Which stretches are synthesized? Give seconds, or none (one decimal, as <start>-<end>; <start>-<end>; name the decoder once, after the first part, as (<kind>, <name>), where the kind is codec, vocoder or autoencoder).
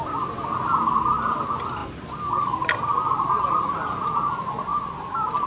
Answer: none